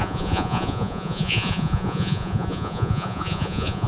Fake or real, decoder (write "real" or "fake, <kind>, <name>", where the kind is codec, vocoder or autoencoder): fake, vocoder, Vocos